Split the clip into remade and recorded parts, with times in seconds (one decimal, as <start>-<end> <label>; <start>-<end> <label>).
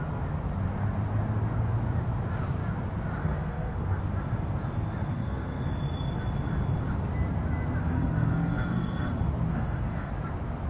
0.0-3.2 recorded; 3.2-4.0 remade; 4.0-5.0 recorded; 5.0-5.7 remade; 5.7-7.8 recorded; 7.8-9.1 remade; 9.1-9.5 recorded; 9.5-10.1 remade; 10.1-10.7 recorded